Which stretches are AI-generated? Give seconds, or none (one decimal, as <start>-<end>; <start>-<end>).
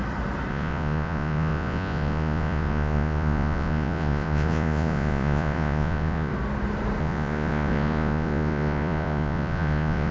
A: 0.5-6.3; 7.0-10.1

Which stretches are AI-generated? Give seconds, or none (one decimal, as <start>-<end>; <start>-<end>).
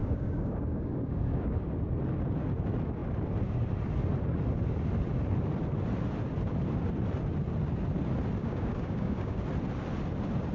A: 0.0-1.5; 8.4-9.4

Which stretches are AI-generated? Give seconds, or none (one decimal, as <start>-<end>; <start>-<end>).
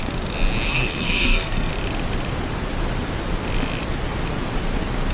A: 0.7-1.7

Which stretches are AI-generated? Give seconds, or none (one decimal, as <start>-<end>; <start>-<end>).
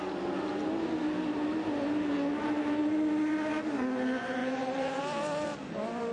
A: 4.4-5.0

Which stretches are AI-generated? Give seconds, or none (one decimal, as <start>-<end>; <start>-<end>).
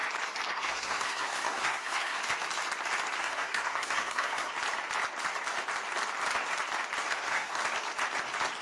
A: 0.5-2.2; 3.2-4.5; 7.1-7.6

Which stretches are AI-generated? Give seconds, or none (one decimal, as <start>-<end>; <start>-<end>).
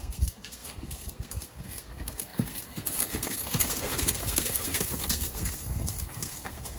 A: 0.0-6.8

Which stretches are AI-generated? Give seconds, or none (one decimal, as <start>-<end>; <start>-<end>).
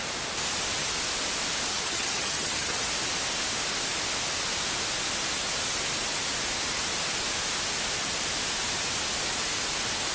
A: 1.7-2.8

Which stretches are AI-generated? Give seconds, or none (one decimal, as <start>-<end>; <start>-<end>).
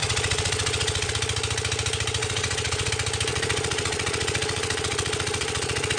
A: 0.0-1.1; 2.2-2.9; 3.3-6.0